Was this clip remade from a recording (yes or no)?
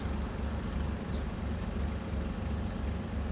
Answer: no